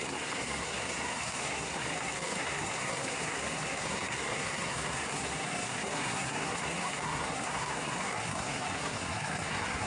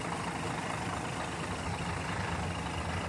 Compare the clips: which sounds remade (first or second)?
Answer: first